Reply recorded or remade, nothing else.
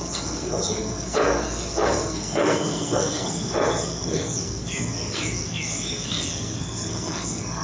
remade